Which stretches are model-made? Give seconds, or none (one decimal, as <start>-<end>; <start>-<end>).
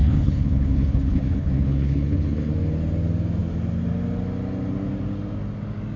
0.0-2.5